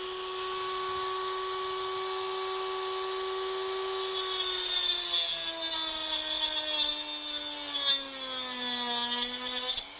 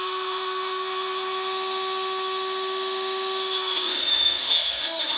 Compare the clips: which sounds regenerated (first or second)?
second